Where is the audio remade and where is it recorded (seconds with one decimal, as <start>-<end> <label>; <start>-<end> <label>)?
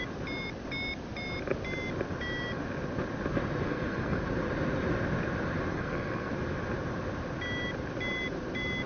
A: 0.0-3.7 recorded; 3.7-4.2 remade; 4.2-5.7 recorded; 5.7-6.3 remade; 6.3-8.9 recorded